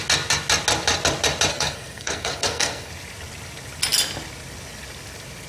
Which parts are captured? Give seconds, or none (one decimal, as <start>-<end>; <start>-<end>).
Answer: 0.0-1.5; 2.9-5.5